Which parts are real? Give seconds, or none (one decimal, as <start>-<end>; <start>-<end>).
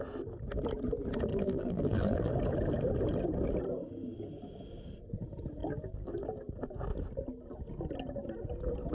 0.0-1.3; 2.3-5.6; 6.1-8.9